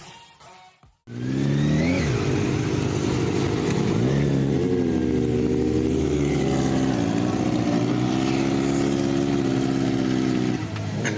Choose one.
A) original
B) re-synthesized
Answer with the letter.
A